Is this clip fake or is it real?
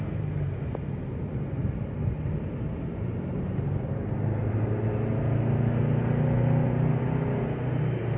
real